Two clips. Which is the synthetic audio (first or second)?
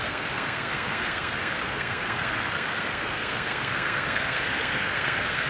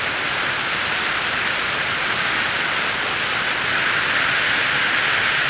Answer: first